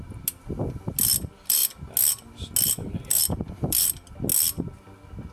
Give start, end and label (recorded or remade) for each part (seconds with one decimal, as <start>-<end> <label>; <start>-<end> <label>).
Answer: 0.0-5.3 recorded